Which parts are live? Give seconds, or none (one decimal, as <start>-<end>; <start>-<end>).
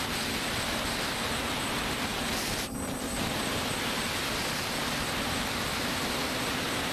0.0-6.9